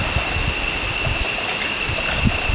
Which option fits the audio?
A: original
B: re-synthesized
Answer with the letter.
A